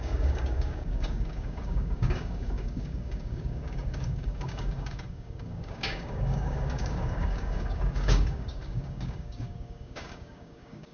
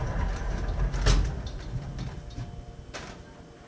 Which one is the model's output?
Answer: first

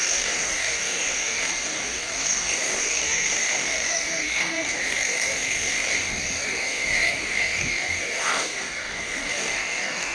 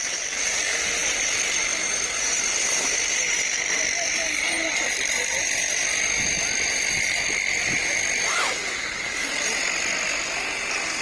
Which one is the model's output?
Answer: first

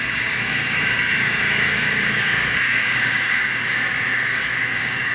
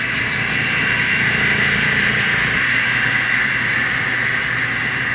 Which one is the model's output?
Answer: first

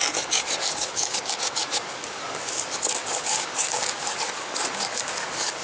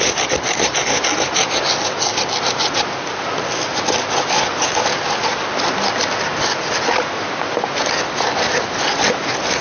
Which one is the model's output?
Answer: first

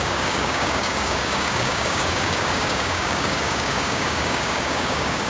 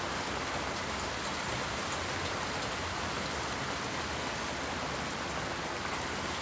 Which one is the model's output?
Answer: first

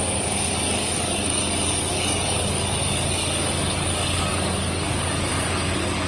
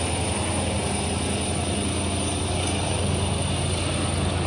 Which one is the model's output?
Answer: first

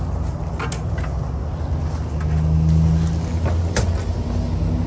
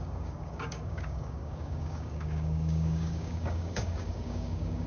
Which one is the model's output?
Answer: second